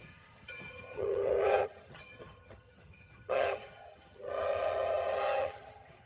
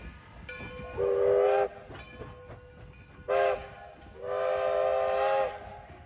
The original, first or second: second